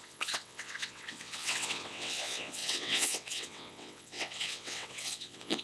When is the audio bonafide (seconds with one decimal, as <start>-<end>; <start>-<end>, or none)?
none